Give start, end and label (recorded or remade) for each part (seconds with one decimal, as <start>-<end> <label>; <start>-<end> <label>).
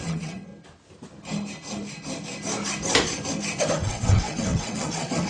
0.0-0.5 remade; 0.5-3.7 recorded; 3.7-5.3 remade